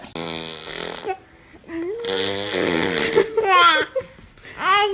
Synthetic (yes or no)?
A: no